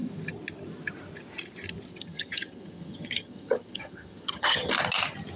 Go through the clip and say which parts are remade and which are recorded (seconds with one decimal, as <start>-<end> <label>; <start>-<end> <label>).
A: 0.0-1.9 recorded; 1.9-4.7 remade; 4.7-5.4 recorded